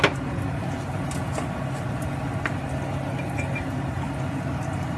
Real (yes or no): yes